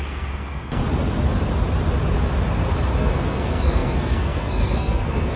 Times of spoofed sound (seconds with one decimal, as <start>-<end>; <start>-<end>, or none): 0.0-0.8; 3.0-5.4